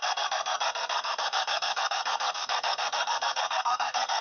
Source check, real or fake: fake